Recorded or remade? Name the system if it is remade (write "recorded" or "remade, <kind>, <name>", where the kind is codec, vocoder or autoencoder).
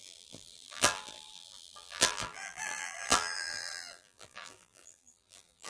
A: remade, vocoder, BigVGAN v2